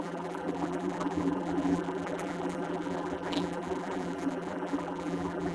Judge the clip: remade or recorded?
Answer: remade